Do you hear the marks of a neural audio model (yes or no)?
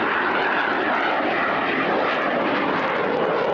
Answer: no